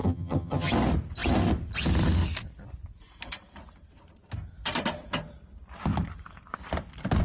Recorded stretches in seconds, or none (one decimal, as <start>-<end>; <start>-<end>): 0.7-7.2